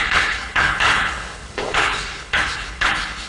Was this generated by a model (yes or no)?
yes